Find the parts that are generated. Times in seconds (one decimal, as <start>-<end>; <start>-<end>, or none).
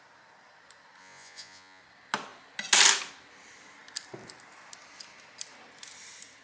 1.0-1.8